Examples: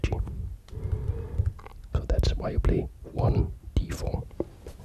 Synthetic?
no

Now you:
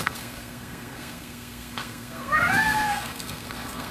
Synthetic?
yes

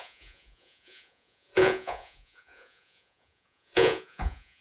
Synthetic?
yes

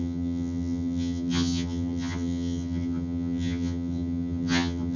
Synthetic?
yes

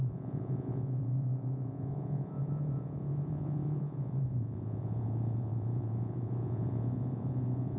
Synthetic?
yes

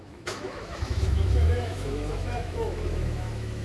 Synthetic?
yes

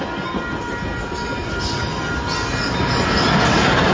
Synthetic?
no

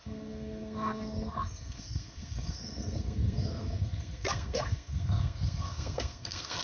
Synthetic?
yes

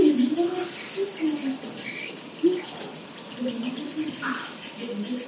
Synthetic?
no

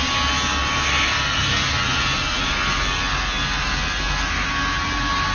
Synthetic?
no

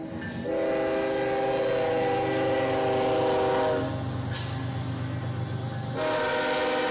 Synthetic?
no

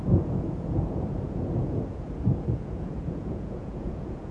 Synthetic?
yes